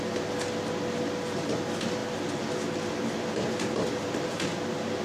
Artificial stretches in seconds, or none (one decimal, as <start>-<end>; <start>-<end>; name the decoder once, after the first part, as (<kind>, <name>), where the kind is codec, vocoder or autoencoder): none